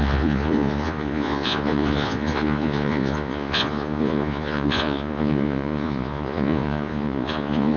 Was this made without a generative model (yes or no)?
no